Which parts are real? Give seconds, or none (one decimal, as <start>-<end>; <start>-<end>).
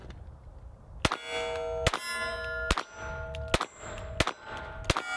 0.0-5.2